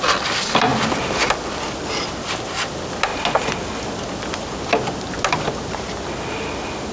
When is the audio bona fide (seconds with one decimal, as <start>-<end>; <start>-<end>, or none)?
0.0-6.9